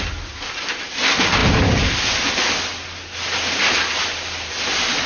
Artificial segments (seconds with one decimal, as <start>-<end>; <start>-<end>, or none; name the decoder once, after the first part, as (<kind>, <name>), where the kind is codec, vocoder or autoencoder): none